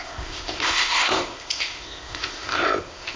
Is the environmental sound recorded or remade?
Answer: remade